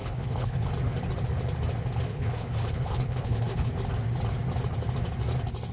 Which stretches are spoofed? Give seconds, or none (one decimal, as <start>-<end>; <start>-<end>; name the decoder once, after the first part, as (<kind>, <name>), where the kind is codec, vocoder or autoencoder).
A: 0.0-0.7 (codec, HILCodec); 2.1-3.7